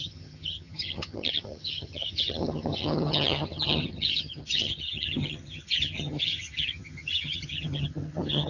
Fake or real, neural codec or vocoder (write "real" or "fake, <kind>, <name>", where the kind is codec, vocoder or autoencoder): fake, vocoder, HiFi-GAN